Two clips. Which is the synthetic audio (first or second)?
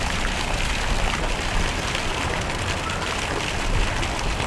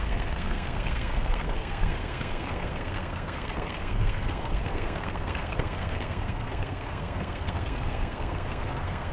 second